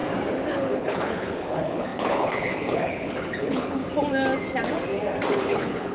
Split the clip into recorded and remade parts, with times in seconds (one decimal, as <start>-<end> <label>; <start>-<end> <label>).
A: 0.0-0.5 recorded; 0.5-3.8 remade; 3.8-5.3 recorded; 5.3-5.9 remade